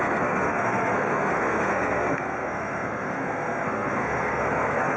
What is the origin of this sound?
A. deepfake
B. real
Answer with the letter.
A